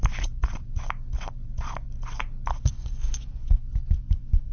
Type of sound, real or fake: real